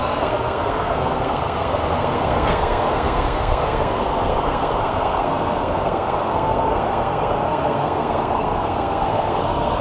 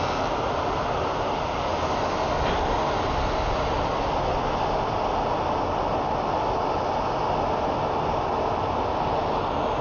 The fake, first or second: first